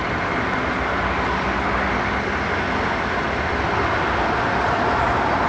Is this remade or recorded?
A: recorded